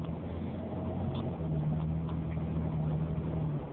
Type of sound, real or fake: real